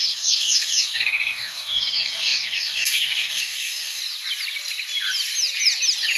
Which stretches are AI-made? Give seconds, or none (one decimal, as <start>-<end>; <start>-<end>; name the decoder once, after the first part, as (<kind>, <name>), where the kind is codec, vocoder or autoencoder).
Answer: 0.0-4.0 (codec, DAC)